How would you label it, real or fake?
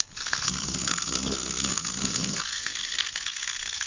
fake